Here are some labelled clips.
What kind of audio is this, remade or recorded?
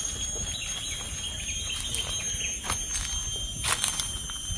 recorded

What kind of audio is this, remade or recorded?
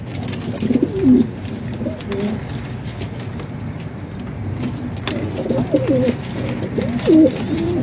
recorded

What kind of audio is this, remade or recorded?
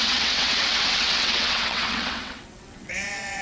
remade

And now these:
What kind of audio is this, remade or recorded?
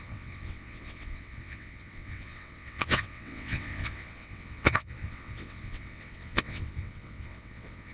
remade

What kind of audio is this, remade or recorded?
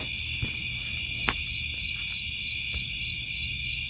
recorded